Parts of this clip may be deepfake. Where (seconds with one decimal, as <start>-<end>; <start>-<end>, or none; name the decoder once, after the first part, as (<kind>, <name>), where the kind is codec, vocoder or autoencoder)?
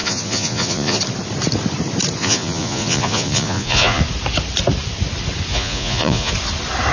0.0-1.0 (vocoder, Vocos); 2.2-4.0; 5.5-6.3